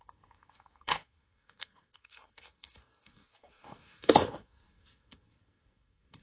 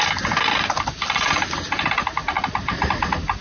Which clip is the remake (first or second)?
first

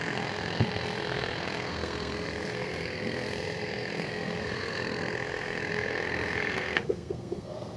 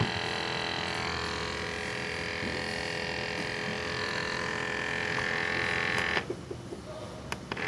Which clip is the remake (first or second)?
first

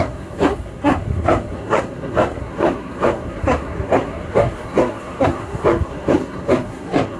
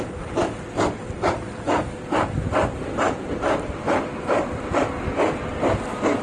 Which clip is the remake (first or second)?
first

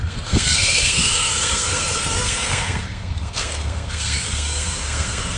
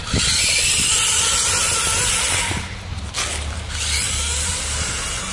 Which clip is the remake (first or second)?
first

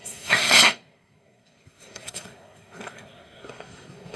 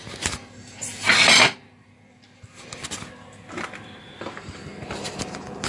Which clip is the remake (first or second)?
first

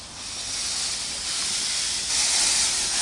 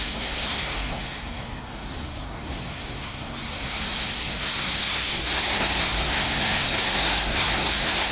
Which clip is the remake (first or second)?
second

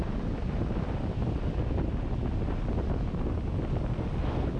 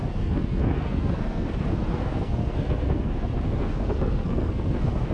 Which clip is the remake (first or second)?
second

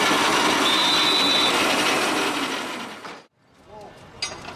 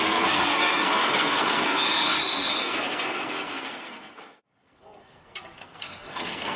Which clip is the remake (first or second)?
second